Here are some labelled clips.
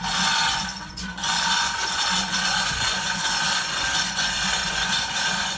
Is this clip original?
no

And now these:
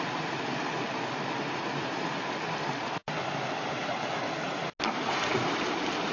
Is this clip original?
yes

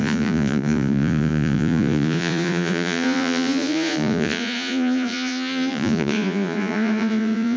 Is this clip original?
no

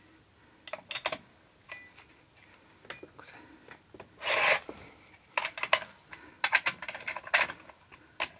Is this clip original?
yes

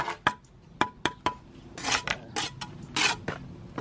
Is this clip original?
yes